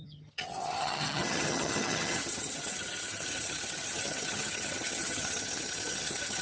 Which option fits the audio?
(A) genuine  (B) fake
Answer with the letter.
B